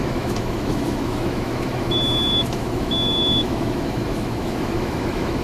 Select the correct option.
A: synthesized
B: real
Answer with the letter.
A